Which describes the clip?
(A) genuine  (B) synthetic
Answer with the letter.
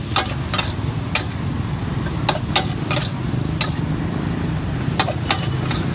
A